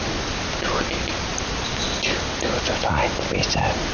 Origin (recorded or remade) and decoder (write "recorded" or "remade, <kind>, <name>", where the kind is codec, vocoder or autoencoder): recorded